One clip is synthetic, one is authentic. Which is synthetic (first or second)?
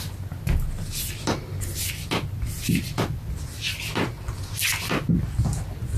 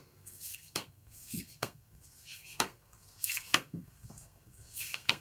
second